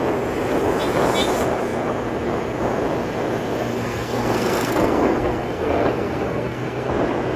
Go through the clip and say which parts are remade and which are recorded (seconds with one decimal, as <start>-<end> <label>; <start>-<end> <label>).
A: 0.0-3.7 recorded; 3.7-6.9 remade; 6.9-7.4 recorded